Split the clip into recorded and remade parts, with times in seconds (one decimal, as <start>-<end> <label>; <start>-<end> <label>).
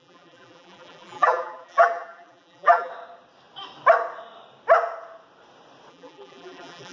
0.0-2.9 remade; 2.9-5.9 recorded; 5.9-6.9 remade